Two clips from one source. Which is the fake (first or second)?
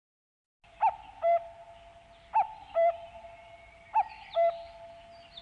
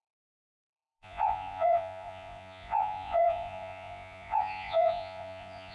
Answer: second